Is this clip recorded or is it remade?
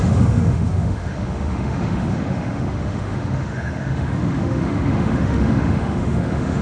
remade